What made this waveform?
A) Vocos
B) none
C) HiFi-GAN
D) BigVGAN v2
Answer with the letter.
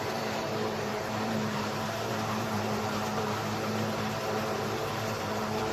D